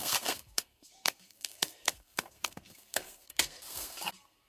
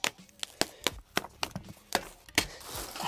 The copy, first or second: first